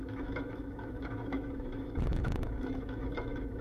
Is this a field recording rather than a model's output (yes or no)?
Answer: no